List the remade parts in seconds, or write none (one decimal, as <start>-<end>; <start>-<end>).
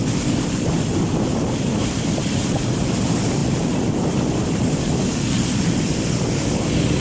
0.0-7.0